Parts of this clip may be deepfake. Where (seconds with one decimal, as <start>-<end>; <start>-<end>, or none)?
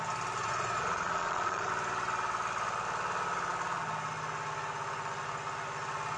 0.4-1.7